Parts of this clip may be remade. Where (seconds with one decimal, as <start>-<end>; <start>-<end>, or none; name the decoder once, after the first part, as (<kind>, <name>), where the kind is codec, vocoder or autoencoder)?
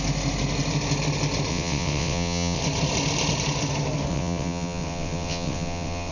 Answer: 1.5-2.6 (vocoder, WaveNeXt); 4.1-6.1